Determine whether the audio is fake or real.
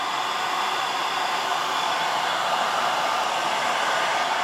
fake